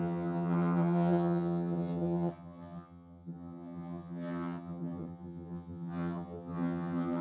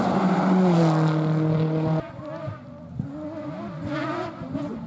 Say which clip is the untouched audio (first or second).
second